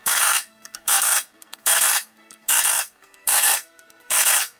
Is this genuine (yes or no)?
no